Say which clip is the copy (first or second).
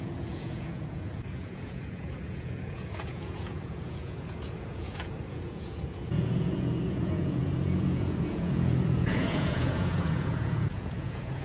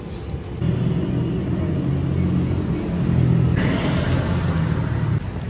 first